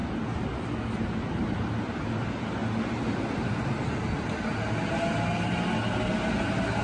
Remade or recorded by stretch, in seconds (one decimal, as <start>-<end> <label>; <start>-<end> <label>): 0.0-6.8 recorded